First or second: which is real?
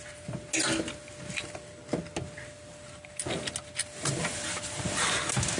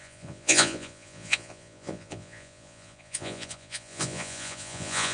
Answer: first